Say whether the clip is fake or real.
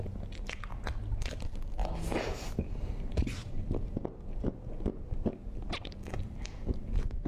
real